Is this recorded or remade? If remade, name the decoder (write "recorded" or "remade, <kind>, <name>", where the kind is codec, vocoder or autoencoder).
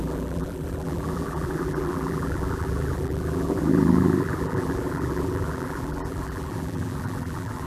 remade, vocoder, BigVGAN v2